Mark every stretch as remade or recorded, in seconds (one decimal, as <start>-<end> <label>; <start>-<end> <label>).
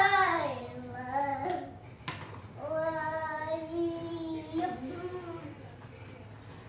0.0-6.7 recorded